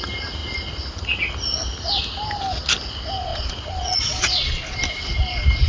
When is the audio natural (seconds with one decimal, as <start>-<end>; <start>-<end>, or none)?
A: 0.0-3.3; 4.8-5.7